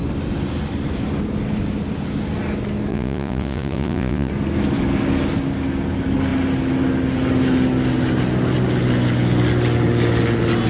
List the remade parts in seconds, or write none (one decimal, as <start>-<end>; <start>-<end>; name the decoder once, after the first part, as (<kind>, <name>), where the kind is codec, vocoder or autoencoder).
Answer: 2.9-4.3 (vocoder, Vocos)